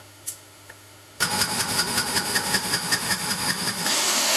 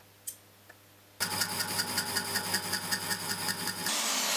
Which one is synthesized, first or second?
first